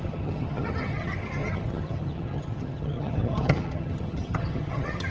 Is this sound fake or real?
fake